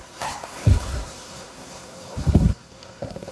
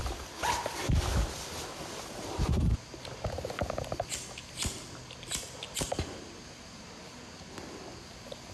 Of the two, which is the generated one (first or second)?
first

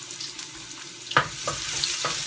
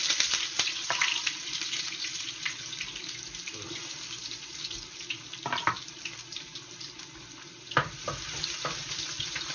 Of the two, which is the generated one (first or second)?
second